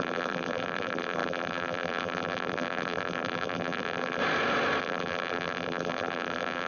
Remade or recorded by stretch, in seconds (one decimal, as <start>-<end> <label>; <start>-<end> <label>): 0.0-4.2 remade; 4.2-4.8 recorded; 4.8-6.7 remade